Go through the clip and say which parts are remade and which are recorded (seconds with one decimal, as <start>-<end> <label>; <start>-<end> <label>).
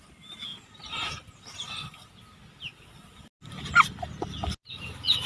0.0-5.3 recorded